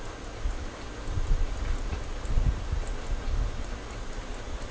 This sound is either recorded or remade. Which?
recorded